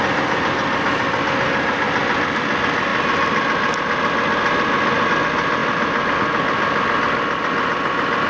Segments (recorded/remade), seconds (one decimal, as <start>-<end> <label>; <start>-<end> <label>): 0.0-5.6 recorded; 5.6-6.1 remade; 6.1-8.3 recorded